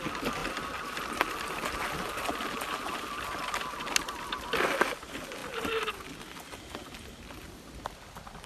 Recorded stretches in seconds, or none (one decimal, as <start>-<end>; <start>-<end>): 0.0-8.5